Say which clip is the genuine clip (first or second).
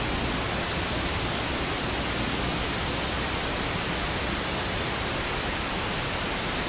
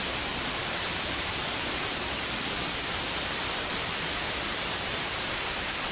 first